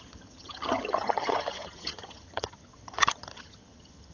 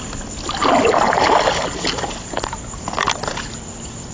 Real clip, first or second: second